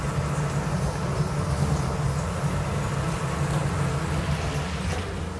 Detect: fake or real real